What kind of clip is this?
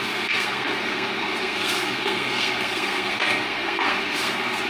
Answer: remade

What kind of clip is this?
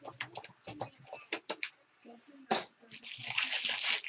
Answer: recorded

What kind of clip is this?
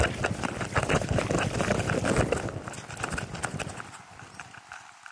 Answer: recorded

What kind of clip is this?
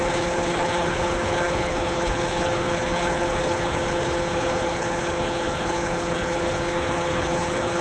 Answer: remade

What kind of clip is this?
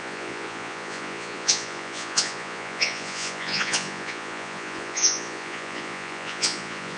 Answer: remade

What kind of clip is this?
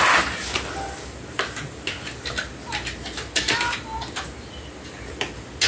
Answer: recorded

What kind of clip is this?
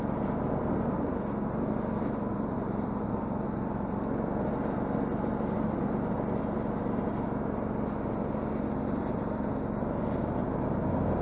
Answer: recorded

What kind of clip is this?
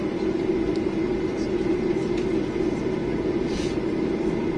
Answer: recorded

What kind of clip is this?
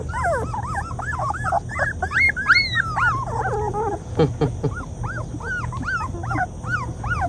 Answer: recorded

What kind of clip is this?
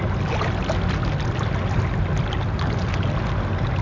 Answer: recorded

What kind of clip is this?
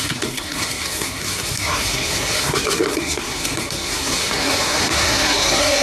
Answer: remade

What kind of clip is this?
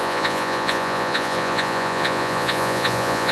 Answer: remade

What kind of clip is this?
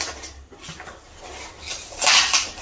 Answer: recorded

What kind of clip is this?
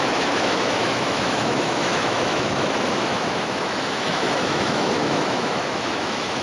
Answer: remade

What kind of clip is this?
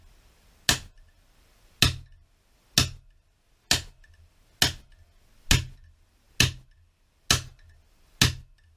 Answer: recorded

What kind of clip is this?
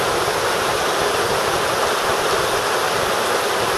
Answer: remade